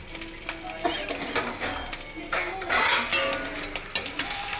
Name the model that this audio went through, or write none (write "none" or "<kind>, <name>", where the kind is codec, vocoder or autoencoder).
none